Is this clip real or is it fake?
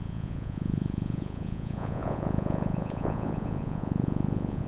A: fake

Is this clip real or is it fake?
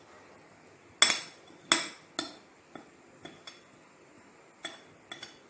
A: real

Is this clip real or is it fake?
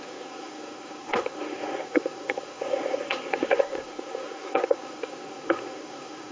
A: fake